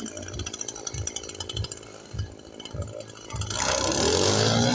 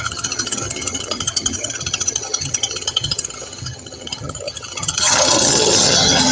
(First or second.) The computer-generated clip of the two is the second